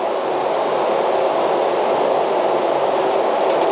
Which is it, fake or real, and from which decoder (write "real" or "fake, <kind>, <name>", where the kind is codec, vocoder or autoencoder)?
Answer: real